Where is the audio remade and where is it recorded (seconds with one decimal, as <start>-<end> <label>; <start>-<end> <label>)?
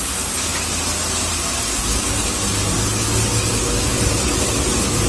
0.0-5.1 recorded